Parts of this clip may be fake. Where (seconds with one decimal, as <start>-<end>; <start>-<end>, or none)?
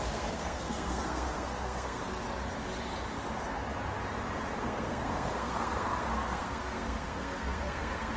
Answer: 0.0-2.0; 4.6-8.2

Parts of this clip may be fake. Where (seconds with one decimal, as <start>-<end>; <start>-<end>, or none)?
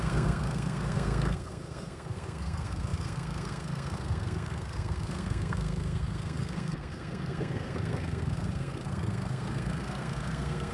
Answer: 0.0-10.7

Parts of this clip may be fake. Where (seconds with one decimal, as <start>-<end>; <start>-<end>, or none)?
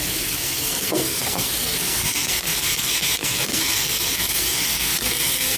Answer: 0.0-5.6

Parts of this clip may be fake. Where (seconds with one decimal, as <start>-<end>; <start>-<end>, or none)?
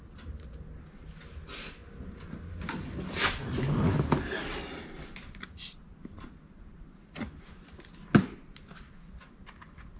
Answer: none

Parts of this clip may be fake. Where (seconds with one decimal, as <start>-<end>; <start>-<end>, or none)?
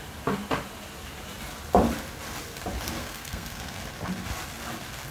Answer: 3.0-3.8